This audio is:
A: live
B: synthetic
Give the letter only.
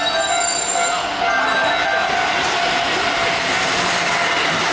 A